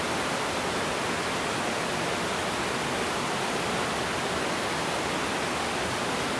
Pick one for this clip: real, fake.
real